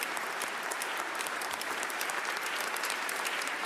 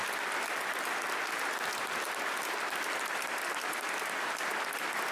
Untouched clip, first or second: second